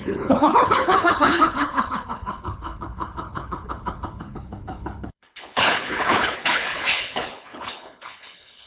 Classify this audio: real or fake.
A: fake